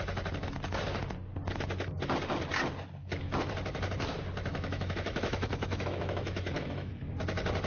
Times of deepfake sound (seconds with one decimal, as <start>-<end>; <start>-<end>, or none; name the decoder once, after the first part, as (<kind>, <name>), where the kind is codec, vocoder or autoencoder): 3.0-3.5 (autoencoder, DAC-VAE); 4.5-6.9